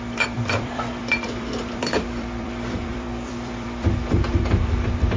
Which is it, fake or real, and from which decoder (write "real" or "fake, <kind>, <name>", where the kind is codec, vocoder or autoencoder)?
fake, vocoder, BigVGAN v2